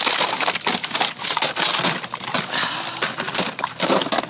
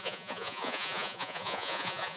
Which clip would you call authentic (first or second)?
first